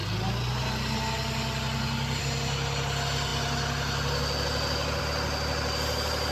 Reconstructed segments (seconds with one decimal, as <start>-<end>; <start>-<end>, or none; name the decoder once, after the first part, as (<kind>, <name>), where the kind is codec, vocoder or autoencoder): none